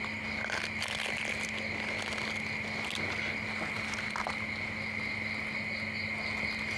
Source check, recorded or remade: recorded